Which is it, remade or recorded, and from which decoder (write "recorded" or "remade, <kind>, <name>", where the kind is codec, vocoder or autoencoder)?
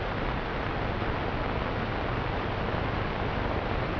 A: recorded